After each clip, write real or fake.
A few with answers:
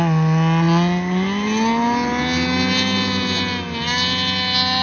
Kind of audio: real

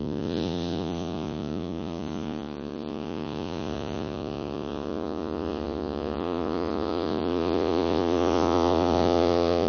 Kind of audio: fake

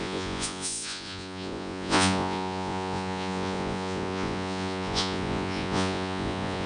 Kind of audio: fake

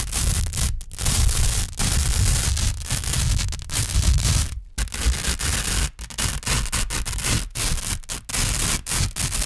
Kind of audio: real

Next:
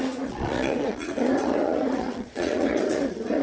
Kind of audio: fake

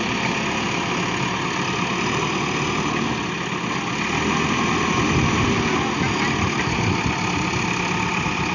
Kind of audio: real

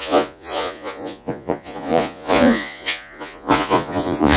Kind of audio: fake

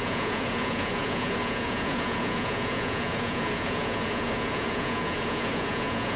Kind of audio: fake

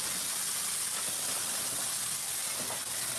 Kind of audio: real